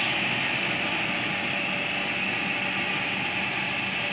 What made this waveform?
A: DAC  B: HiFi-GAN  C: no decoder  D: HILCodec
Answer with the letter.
C